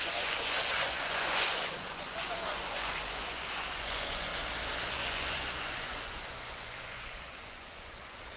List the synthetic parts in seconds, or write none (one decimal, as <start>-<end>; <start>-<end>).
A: 0.0-4.3; 4.9-8.4